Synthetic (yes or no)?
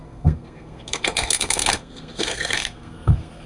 yes